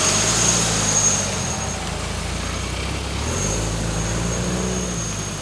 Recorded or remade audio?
recorded